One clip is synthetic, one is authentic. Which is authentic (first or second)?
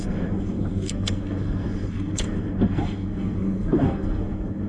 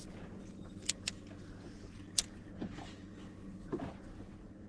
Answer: second